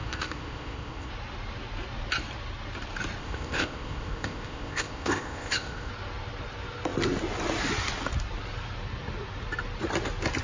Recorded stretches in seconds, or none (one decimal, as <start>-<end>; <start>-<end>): 1.1-3.2; 5.9-10.4